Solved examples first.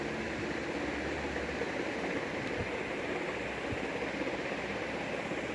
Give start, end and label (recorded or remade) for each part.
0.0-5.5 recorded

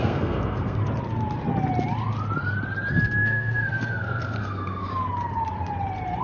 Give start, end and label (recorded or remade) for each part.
0.0-0.8 remade; 0.8-2.9 recorded; 2.9-4.9 remade; 4.9-6.2 recorded

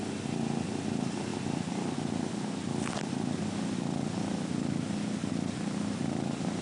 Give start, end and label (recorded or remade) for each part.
0.0-6.6 recorded

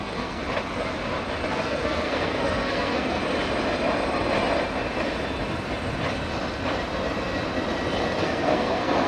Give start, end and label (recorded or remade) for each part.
0.0-0.4 remade; 0.4-1.5 recorded; 1.5-3.2 remade; 3.2-8.2 recorded; 8.2-9.1 remade

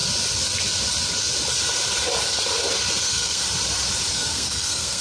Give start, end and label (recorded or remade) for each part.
0.0-3.0 recorded; 3.0-3.4 remade; 3.4-4.1 recorded; 4.1-5.0 remade

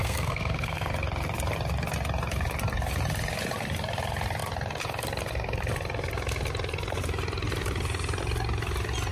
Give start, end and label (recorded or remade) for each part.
0.0-0.9 remade; 0.9-9.1 recorded

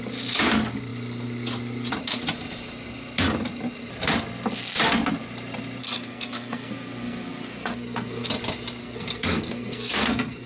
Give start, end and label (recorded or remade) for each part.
0.0-5.8 recorded; 5.8-8.3 remade; 8.3-8.8 recorded; 8.8-10.5 remade